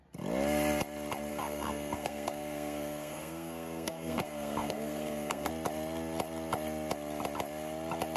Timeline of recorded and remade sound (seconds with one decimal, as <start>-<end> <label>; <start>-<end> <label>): 0.0-1.3 recorded; 1.3-5.5 remade; 5.5-8.2 recorded